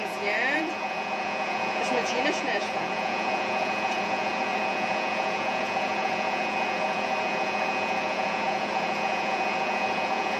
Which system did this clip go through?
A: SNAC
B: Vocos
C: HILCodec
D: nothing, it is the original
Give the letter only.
B